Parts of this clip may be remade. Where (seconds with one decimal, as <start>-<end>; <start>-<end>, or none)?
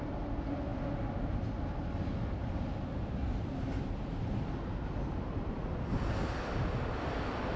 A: none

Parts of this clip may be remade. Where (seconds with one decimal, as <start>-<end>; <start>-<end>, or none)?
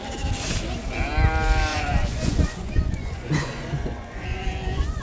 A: 1.7-5.0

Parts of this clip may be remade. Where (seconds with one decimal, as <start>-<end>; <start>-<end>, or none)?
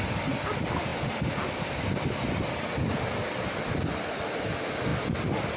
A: none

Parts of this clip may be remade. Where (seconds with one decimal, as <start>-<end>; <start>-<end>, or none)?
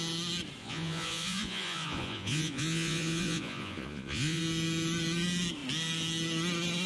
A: 0.6-4.4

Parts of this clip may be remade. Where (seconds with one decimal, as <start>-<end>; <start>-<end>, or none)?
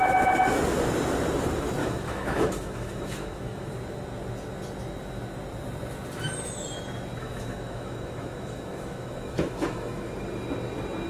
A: 1.8-3.7; 7.2-10.1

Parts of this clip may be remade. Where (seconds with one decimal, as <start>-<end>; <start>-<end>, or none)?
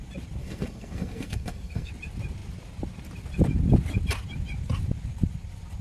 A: 0.4-1.9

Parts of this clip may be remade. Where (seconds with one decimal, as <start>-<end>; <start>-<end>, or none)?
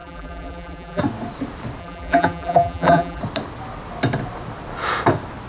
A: 0.0-1.0; 1.8-3.2